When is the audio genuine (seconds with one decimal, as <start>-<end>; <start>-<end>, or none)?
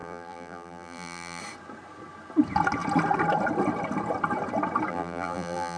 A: 1.4-4.9